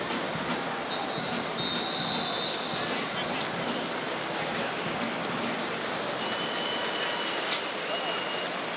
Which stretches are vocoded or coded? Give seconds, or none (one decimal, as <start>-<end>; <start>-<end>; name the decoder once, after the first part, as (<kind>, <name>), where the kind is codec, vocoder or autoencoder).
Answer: 4.6-5.4 (codec, DAC)